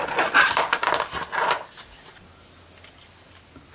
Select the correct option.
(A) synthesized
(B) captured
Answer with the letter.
B